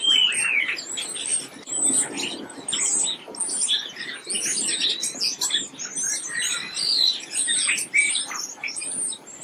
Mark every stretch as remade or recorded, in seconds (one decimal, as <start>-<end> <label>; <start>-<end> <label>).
0.0-6.9 recorded; 6.9-9.4 remade